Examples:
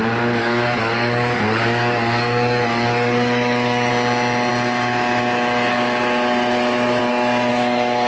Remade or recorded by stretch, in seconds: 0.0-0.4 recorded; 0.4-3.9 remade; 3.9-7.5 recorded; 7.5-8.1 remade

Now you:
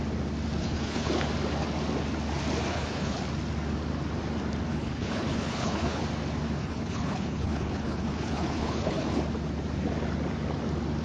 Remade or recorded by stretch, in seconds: 0.0-0.6 recorded; 0.6-1.1 remade; 1.1-2.7 recorded; 2.7-3.2 remade; 3.2-4.7 recorded; 4.7-6.0 remade; 6.0-6.6 recorded; 6.6-9.2 remade; 9.2-11.0 recorded